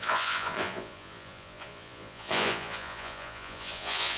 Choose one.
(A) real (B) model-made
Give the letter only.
B